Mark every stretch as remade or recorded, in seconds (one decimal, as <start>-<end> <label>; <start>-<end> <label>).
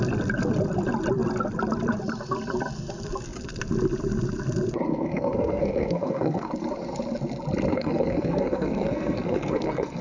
0.0-4.9 recorded; 4.9-6.5 remade; 6.5-7.7 recorded; 7.7-10.0 remade